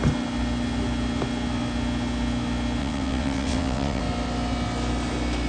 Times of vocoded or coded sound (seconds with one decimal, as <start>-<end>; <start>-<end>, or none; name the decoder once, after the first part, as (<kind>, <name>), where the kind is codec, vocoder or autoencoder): 2.8-4.0 (vocoder, WaveNeXt)